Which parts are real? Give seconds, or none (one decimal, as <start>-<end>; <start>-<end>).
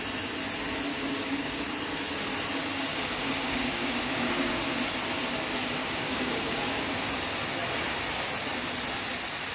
0.0-0.9; 1.7-2.9; 4.6-5.8; 6.6-9.5